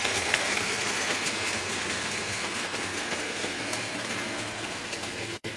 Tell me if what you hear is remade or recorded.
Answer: remade